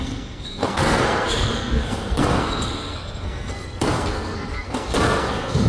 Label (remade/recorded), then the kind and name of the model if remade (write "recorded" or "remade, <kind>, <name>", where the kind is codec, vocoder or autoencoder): remade, codec, SNAC